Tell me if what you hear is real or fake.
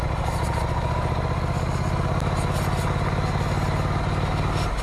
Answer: real